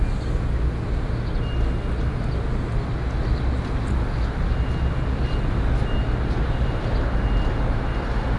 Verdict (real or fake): real